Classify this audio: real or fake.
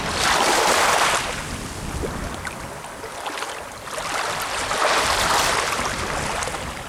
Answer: real